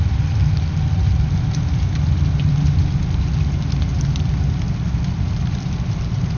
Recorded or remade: recorded